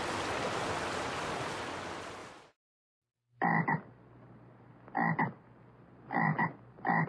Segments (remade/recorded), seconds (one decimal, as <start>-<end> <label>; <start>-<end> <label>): 0.0-7.1 recorded